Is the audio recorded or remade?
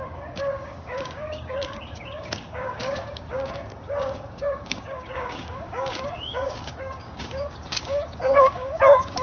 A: remade